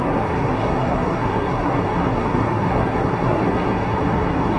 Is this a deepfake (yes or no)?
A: yes